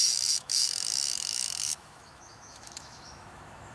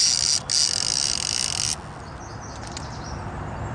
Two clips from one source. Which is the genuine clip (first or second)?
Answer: second